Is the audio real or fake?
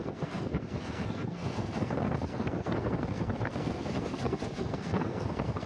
fake